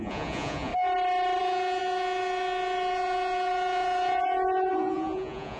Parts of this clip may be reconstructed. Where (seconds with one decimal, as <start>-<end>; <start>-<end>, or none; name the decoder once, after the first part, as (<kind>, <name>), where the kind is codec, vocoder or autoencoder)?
0.0-0.7 (vocoder, Vocos); 1.4-5.6